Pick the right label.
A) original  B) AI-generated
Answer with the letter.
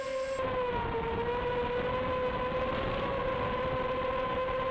A